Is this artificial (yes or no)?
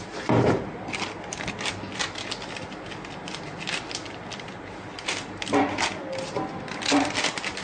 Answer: no